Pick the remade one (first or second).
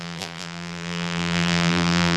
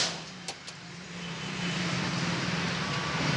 first